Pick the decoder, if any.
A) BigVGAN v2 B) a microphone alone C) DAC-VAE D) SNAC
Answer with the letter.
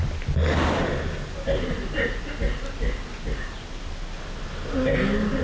B